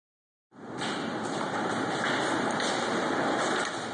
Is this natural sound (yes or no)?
yes